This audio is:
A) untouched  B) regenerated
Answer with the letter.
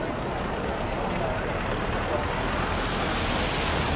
A